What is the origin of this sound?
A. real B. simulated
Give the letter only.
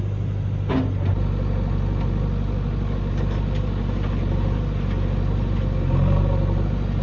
A